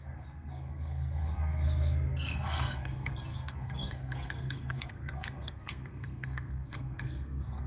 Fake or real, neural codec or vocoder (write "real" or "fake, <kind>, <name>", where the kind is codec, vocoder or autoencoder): fake, codec, SNAC